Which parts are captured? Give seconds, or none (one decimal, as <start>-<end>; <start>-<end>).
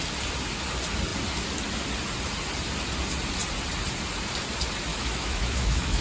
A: 0.0-4.9